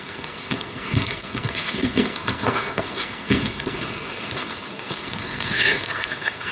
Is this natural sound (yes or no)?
no